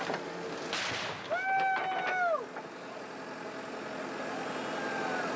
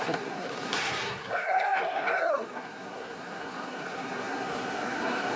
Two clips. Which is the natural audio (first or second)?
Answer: first